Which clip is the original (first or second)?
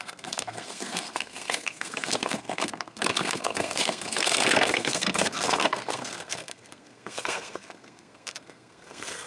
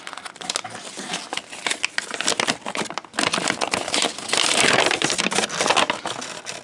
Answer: second